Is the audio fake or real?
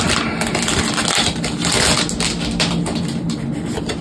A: real